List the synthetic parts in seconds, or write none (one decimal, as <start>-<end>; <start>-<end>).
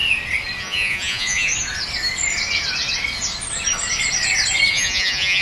0.6-1.5; 4.7-5.4